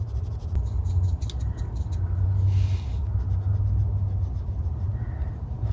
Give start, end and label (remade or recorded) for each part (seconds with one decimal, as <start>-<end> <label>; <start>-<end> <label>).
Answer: 0.0-5.7 recorded